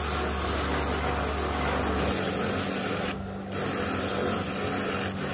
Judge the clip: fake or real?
real